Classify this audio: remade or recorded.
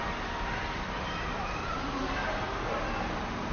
recorded